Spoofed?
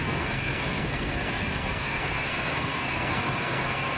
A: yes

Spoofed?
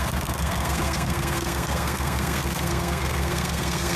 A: yes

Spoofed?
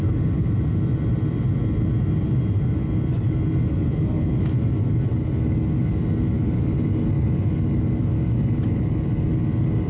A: no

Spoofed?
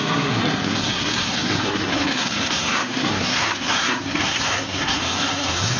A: yes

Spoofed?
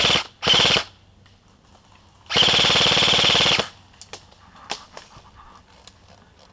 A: no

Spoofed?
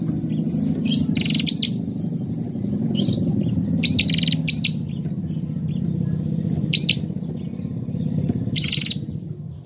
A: no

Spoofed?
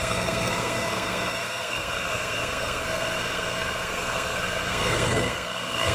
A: yes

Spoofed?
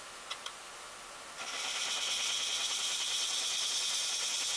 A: no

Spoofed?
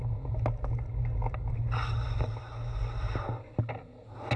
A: no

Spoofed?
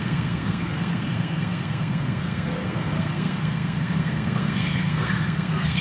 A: yes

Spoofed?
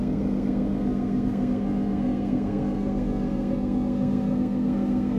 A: yes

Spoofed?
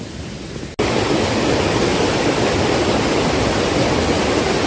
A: no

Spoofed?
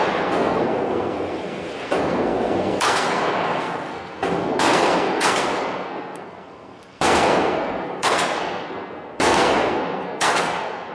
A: yes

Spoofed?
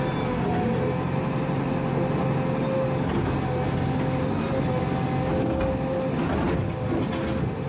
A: no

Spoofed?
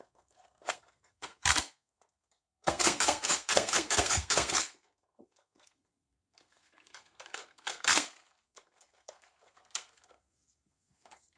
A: yes